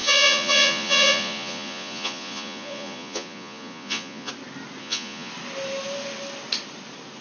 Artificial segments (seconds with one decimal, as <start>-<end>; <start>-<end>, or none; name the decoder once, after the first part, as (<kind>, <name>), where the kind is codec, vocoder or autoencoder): 0.0-4.3 (vocoder, Vocos); 4.8-5.3